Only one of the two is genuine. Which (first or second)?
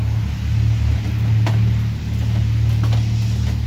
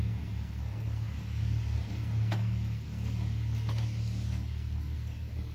first